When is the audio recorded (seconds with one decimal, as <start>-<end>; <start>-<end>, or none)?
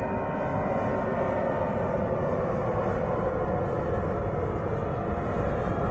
0.0-2.7; 3.5-5.9